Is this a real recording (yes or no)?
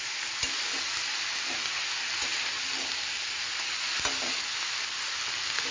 yes